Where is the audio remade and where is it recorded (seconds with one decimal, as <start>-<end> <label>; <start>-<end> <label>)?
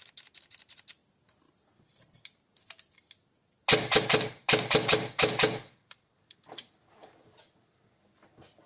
0.0-8.7 recorded